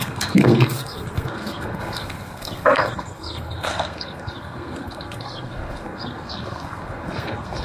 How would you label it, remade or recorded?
remade